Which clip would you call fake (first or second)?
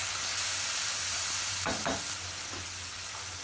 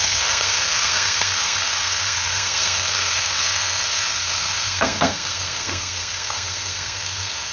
second